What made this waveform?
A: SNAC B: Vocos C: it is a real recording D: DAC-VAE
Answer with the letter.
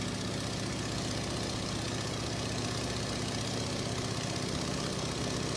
C